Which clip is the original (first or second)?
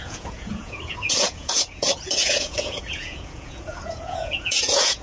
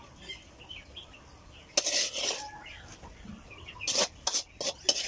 second